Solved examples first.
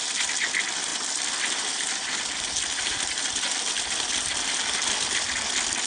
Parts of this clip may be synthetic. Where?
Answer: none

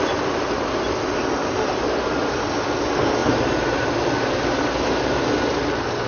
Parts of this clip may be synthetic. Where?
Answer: 1.4-2.4; 3.2-5.3